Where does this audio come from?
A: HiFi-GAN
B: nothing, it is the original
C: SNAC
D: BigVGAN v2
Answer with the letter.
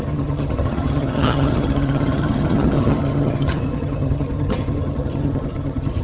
A